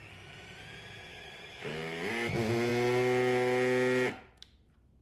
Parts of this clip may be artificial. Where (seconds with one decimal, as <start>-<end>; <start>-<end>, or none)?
1.1-2.1